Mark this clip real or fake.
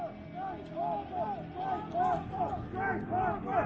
real